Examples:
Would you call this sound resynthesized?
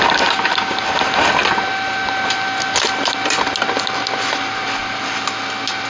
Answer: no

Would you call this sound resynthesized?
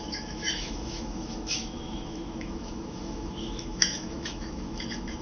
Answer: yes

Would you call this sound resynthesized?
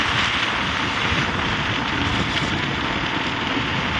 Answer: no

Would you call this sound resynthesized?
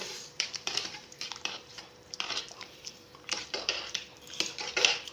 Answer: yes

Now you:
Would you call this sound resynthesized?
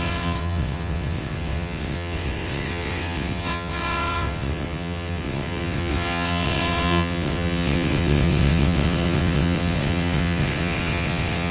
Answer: yes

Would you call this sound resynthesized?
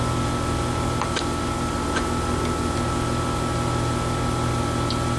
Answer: no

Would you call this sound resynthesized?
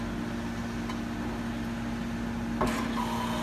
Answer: no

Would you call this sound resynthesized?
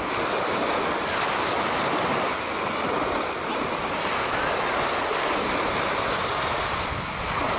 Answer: no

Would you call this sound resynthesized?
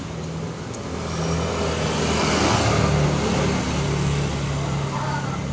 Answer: no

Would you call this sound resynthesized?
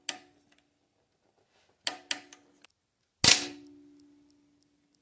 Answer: no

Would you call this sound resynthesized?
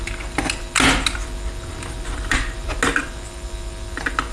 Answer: no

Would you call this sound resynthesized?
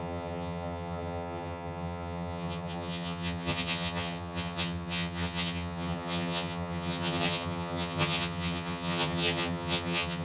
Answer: yes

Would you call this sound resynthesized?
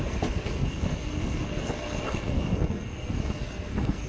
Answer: yes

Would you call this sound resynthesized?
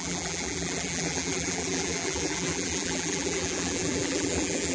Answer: yes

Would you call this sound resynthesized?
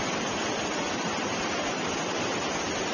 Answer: no